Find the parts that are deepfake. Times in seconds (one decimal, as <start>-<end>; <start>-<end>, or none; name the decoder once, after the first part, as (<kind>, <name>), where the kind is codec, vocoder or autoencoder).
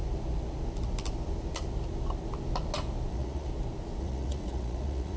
3.1-3.5 (vocoder, Vocos); 4.0-5.2